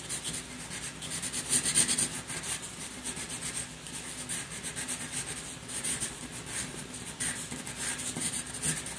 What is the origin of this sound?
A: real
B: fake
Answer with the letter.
A